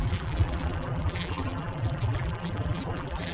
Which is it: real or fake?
fake